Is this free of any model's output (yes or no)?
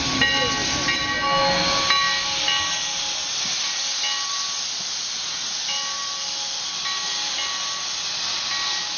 yes